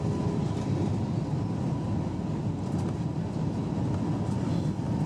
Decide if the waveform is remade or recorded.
recorded